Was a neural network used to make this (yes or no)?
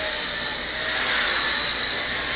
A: no